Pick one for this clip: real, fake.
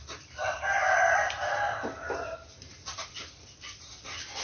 fake